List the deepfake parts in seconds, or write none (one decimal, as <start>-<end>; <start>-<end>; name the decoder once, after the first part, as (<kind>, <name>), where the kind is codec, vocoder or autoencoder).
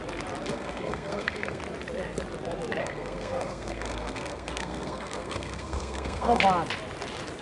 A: 0.5-1.6 (codec, SNAC); 2.8-6.4